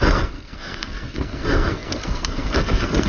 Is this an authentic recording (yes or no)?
no